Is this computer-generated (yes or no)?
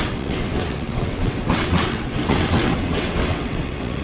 yes